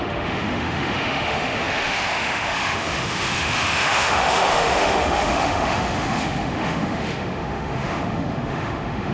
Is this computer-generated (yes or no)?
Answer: yes